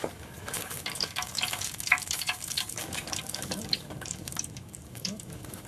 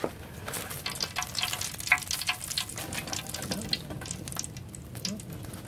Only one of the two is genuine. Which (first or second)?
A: second